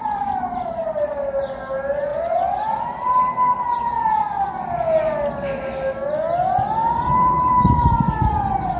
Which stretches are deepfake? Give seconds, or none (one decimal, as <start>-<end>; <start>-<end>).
0.0-1.1; 6.8-7.9